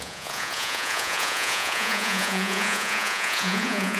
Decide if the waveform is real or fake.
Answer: fake